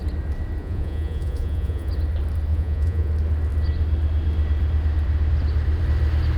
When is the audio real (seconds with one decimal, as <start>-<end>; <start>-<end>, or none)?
0.0-0.6; 1.9-2.5; 3.1-6.4